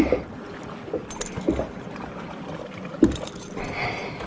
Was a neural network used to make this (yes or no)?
no